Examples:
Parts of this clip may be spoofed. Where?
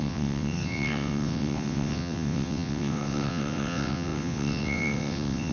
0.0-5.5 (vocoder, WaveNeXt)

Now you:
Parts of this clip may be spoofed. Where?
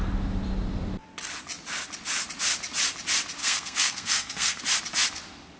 3.4-4.6 (codec, SNAC)